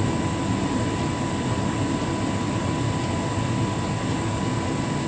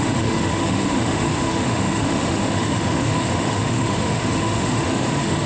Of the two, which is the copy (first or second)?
second